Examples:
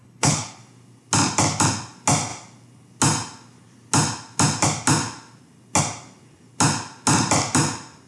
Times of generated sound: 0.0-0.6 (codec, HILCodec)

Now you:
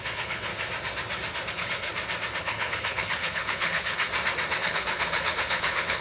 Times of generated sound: 0.0-0.5 (codec, HILCodec); 1.5-1.9; 2.4-4.1; 4.6-6.0

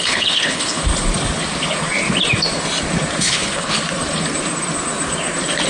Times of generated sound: 0.0-0.8 (codec, HILCodec); 3.3-3.8